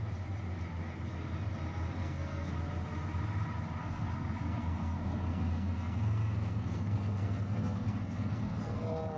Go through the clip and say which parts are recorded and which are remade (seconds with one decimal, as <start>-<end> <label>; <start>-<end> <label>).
0.0-2.0 recorded; 2.0-2.5 remade; 2.5-3.8 recorded; 3.8-9.2 remade